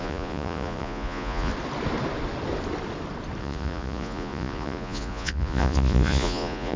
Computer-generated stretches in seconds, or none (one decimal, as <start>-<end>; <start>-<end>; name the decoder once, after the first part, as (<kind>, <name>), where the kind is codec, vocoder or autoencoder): 0.0-1.5 (vocoder, Vocos); 3.4-6.8